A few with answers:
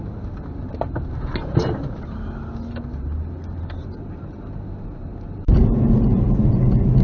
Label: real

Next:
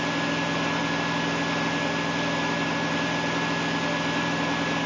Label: real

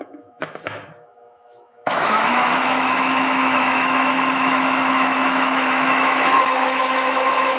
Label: fake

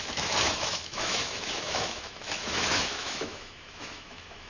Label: fake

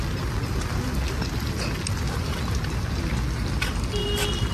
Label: real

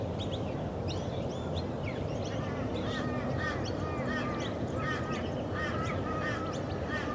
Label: real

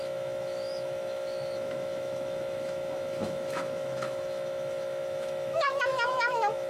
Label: fake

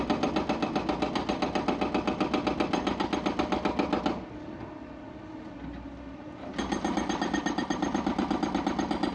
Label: real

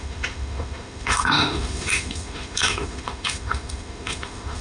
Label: fake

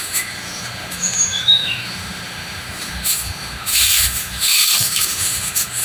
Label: fake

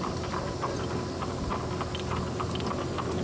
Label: real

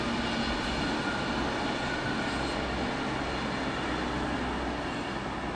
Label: real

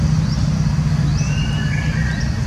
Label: real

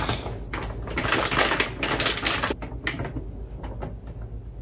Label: real